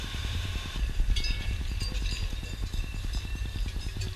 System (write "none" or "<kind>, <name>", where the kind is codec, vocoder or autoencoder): vocoder, BigVGAN v2